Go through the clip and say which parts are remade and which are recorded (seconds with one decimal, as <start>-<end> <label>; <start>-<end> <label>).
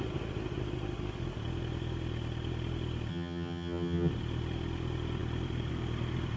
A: 0.0-3.1 recorded; 3.1-4.1 remade; 4.1-6.4 recorded